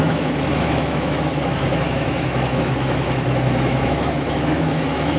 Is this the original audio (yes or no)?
no